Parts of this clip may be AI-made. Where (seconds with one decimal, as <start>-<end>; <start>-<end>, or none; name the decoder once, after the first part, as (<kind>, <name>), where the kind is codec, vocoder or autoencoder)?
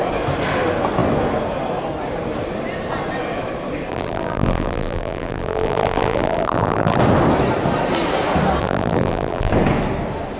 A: 3.9-7.0 (vocoder, BigVGAN v2); 8.6-9.5